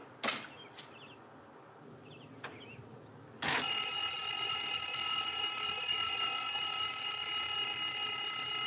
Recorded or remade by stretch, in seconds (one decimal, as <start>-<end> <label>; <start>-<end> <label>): 0.0-4.2 recorded; 4.2-7.3 remade; 7.3-8.7 recorded